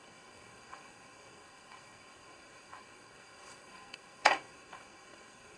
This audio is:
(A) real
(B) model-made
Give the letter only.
B